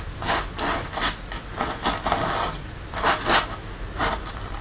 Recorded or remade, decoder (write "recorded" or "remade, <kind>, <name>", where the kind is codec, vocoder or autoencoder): recorded